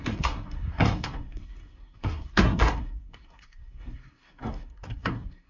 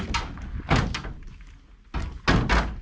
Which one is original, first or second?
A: second